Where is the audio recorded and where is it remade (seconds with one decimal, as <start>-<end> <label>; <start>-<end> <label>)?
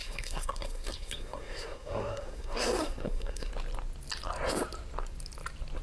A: 0.0-3.5 remade; 3.5-5.8 recorded